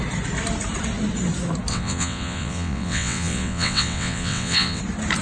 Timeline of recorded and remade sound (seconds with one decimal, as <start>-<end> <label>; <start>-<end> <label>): 0.0-1.7 recorded; 1.7-4.8 remade; 4.8-5.2 recorded